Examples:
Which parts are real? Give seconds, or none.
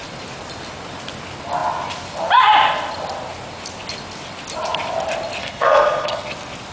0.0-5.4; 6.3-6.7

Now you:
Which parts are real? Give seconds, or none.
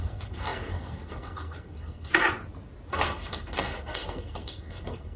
2.2-2.9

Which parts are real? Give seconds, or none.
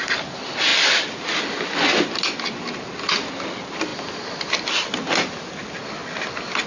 0.0-6.7